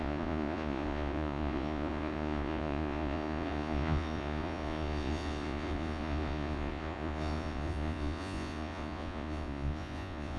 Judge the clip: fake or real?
fake